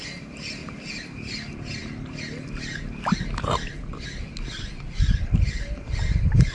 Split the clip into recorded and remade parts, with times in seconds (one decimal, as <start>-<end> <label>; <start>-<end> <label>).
0.0-6.5 recorded

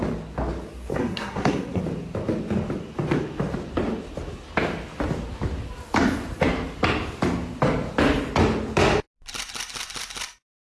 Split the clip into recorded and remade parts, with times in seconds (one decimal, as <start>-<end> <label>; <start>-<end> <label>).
0.0-0.9 recorded; 0.9-1.8 remade; 1.8-10.7 recorded

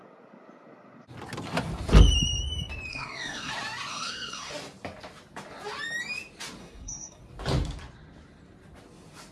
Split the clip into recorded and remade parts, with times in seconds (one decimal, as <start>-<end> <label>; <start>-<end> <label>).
0.0-2.9 recorded; 2.9-3.5 remade; 3.5-3.9 recorded; 3.9-4.5 remade; 4.5-6.6 recorded; 6.6-7.2 remade; 7.2-9.3 recorded

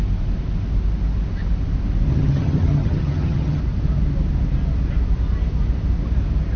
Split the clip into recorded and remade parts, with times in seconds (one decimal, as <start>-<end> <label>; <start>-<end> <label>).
0.0-2.1 recorded; 2.1-3.6 remade; 3.6-6.6 recorded

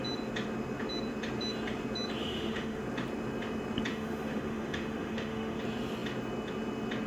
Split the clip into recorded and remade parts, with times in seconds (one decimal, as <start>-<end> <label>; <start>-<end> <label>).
0.0-2.2 recorded; 2.2-2.8 remade; 2.8-3.9 recorded; 3.9-5.6 remade; 5.6-7.1 recorded

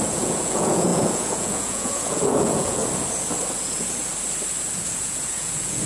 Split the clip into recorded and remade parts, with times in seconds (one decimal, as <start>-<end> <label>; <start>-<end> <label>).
0.0-2.8 remade; 2.8-3.5 recorded; 3.5-4.1 remade; 4.1-4.8 recorded; 4.8-5.9 remade

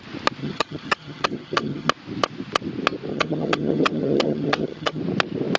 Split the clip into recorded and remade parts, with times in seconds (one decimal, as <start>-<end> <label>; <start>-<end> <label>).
0.0-0.4 recorded; 0.4-1.9 remade; 1.9-3.1 recorded; 3.1-5.0 remade; 5.0-5.6 recorded